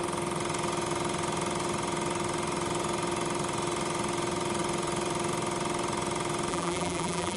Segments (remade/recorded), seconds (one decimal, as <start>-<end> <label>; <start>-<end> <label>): 0.0-6.5 recorded; 6.5-7.4 remade